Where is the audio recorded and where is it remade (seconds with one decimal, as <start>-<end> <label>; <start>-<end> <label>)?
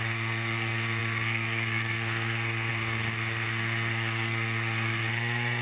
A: 0.0-5.6 remade